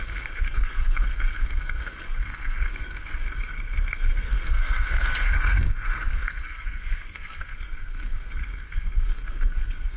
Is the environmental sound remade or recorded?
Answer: remade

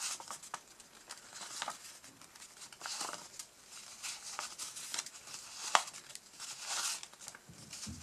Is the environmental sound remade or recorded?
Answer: recorded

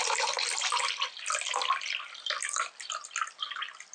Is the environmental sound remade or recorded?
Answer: recorded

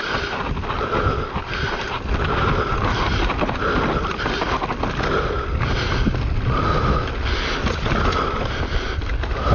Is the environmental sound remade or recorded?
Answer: recorded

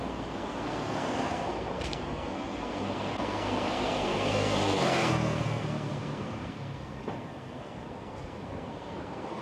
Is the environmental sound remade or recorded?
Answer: remade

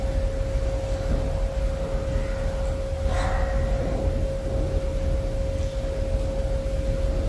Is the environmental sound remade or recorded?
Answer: recorded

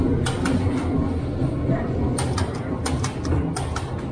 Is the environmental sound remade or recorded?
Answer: recorded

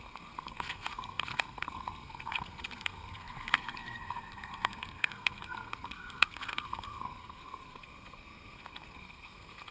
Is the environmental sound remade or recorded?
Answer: remade